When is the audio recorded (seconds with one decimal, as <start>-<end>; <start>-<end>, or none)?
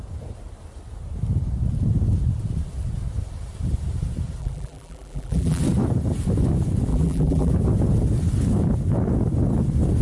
0.0-4.4; 5.6-6.9; 7.5-10.0